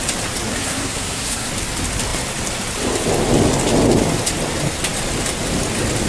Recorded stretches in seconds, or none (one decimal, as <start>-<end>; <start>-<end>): 0.0-0.5; 1.5-6.1